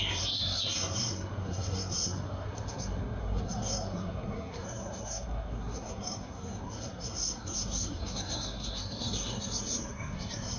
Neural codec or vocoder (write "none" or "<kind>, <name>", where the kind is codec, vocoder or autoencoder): codec, SNAC